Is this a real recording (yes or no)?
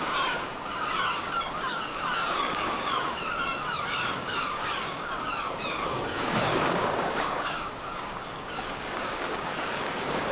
no